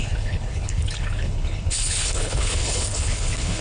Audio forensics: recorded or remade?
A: remade